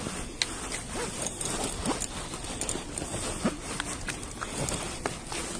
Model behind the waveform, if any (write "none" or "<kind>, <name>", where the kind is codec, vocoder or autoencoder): none